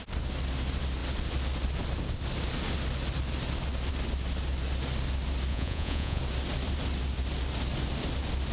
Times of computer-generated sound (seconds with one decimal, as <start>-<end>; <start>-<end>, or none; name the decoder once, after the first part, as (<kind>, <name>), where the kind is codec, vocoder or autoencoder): 5.5-6.2 (vocoder, Vocos)